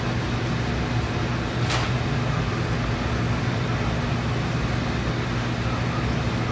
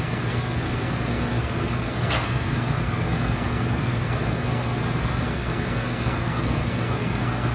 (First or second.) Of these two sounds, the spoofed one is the second